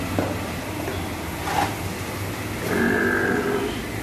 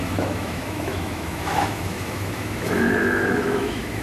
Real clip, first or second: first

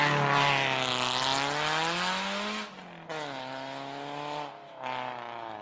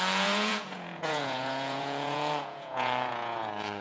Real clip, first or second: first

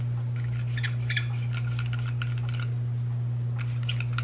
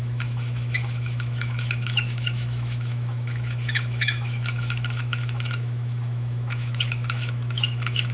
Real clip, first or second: first